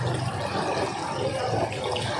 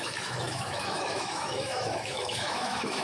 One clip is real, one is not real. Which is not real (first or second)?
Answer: second